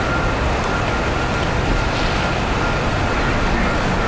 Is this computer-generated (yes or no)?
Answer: no